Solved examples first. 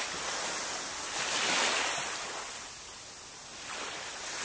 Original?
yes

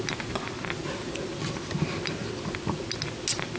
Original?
yes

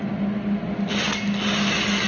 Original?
yes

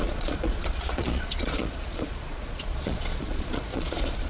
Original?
no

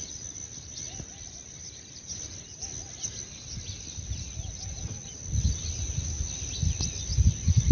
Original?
yes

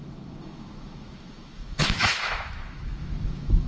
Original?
no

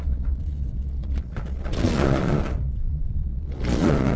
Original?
no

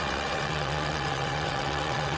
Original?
no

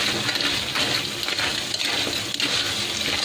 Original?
yes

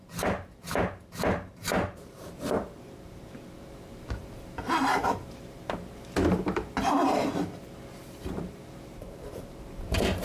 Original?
no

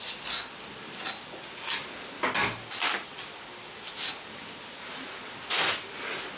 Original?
yes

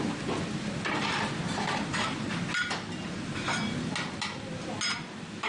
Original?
yes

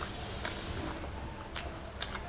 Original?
yes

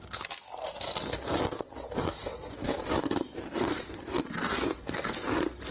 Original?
yes